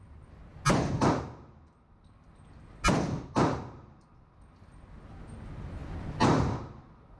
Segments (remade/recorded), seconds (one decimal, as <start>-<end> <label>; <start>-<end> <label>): 0.0-7.2 recorded